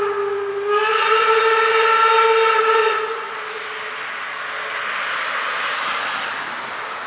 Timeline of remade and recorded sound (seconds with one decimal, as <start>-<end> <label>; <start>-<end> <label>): 0.0-0.9 recorded; 0.9-1.4 remade; 1.4-2.8 recorded; 2.8-3.3 remade; 3.3-7.1 recorded